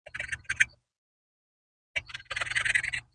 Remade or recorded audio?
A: recorded